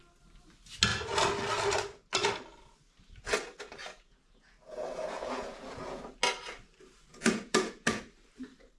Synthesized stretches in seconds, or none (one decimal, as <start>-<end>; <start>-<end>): 3.8-6.0; 7.1-8.0